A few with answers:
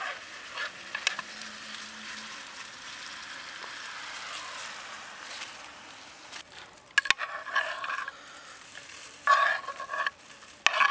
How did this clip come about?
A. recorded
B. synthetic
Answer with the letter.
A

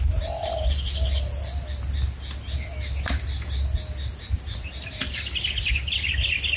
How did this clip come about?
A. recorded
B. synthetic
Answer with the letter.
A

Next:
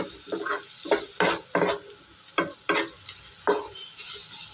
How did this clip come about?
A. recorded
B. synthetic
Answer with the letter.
A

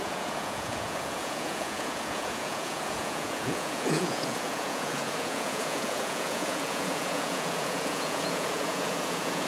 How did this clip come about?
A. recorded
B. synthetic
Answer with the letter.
B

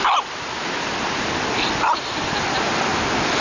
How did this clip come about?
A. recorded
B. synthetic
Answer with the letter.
A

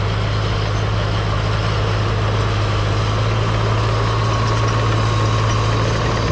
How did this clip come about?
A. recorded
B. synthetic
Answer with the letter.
A